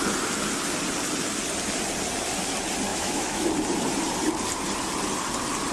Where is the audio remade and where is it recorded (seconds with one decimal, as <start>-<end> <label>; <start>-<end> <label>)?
0.0-2.9 recorded; 2.9-3.5 remade; 3.5-5.7 recorded